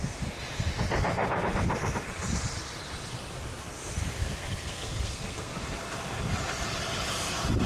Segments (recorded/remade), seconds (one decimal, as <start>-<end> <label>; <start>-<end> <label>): 0.0-4.2 recorded; 4.2-5.5 remade; 5.5-7.7 recorded